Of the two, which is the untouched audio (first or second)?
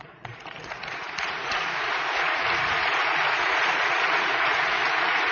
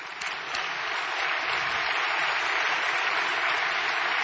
second